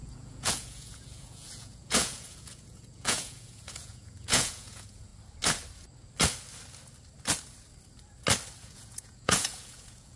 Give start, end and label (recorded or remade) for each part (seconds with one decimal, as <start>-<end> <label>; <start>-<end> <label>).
0.0-5.1 remade; 5.1-8.6 recorded; 8.6-10.2 remade